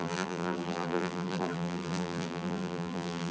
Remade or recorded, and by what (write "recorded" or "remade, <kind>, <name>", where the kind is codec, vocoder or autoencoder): remade, vocoder, BigVGAN v2